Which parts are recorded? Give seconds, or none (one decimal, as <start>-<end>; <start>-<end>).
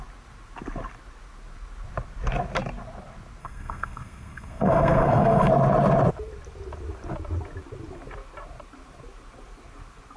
0.0-3.4; 5.5-10.2